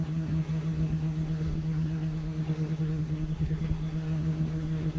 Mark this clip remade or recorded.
remade